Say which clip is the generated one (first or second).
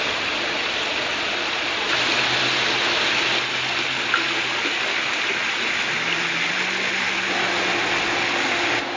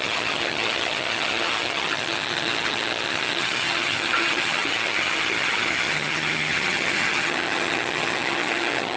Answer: second